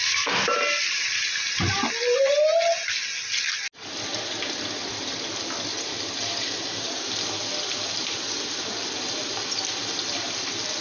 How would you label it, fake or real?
real